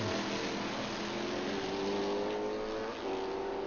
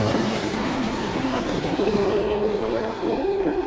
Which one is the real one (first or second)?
first